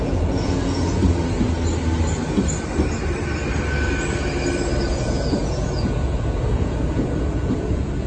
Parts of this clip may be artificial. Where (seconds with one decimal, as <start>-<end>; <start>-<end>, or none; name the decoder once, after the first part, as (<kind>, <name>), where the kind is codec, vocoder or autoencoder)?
0.0-1.0 (vocoder, Vocos); 4.9-8.1